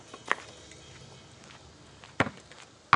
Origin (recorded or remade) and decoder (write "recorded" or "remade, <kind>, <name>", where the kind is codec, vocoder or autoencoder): recorded